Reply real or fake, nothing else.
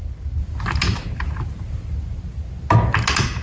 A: real